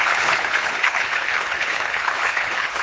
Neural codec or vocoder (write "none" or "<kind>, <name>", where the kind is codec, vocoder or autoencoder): codec, HILCodec